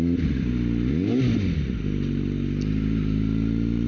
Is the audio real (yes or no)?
yes